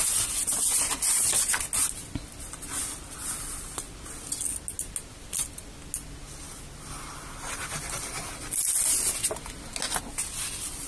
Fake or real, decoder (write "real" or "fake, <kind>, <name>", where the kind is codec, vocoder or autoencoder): real